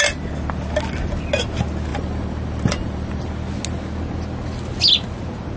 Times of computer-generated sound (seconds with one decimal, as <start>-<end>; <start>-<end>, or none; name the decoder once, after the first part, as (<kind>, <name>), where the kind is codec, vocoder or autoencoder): 1.9-3.3 (vocoder, BigVGAN v2)